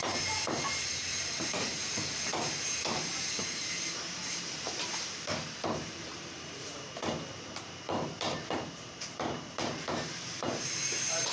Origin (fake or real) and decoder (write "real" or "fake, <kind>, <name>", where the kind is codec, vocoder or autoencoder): fake, vocoder, BigVGAN v2